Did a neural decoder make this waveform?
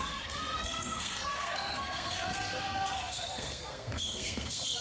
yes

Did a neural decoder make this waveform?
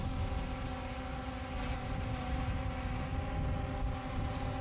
no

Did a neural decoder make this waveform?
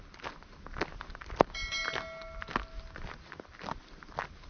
no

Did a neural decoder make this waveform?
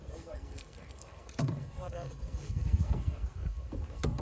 yes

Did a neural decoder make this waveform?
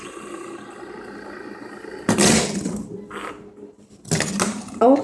no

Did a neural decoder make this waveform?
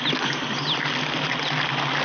no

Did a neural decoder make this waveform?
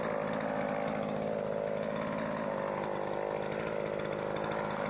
no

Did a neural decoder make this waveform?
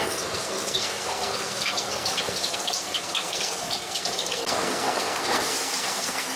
yes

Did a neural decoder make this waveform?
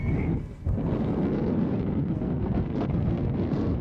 yes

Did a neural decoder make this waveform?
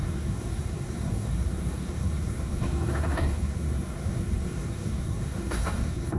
yes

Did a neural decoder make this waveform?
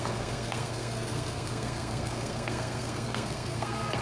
yes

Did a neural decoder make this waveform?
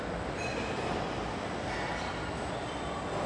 no